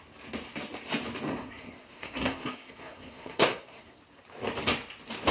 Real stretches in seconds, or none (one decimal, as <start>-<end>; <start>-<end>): 0.0-1.3; 4.0-5.3